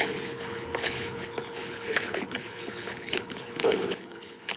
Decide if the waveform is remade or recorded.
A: remade